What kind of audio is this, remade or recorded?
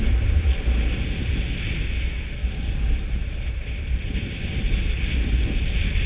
recorded